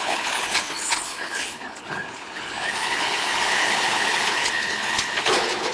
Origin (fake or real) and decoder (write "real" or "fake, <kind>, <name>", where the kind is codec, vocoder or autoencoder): fake, codec, HILCodec